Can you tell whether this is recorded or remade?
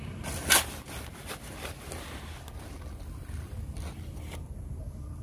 recorded